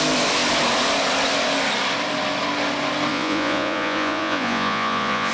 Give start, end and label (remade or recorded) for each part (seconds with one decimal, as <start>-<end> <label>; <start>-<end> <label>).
0.0-3.1 recorded; 3.1-5.3 remade